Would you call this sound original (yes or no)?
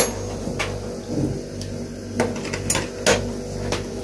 yes